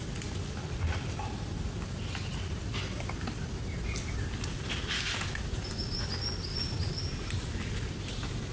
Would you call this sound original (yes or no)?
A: yes